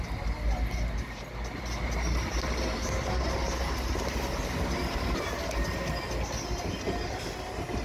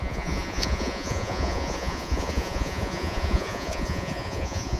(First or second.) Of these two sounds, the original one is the first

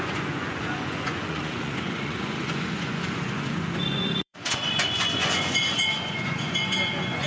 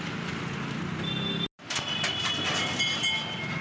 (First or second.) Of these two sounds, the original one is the second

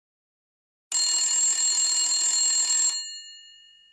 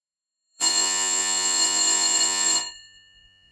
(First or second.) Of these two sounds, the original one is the first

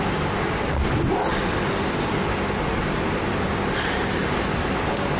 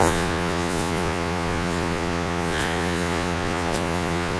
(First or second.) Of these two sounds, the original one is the first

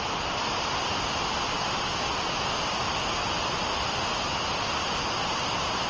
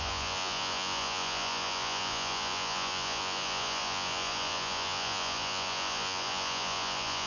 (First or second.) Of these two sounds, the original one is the first